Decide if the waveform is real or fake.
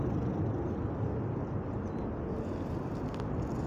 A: real